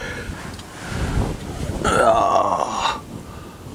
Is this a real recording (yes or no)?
yes